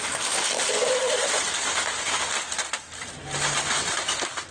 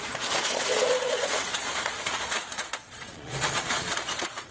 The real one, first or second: first